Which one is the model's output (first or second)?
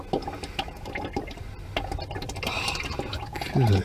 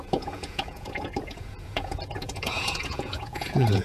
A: second